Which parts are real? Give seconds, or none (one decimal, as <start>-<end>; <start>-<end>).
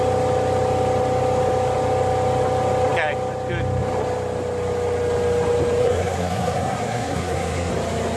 0.0-5.8; 7.7-8.2